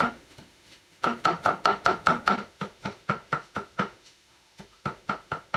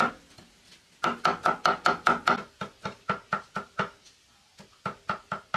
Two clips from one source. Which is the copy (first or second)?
first